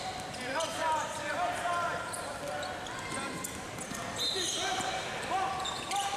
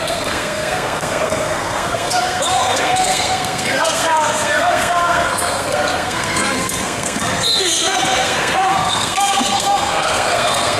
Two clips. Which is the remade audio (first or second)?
second